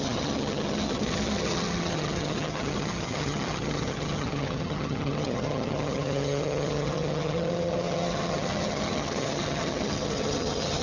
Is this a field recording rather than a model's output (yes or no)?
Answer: no